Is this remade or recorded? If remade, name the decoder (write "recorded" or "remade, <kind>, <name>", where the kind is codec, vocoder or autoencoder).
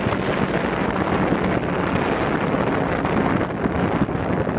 recorded